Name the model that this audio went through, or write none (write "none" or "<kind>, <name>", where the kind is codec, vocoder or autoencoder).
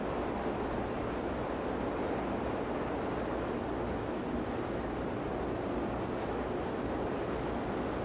none